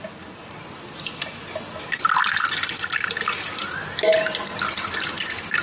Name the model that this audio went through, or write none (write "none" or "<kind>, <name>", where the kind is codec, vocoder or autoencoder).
none